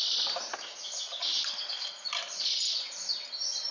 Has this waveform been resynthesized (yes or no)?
no